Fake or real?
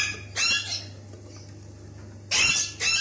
real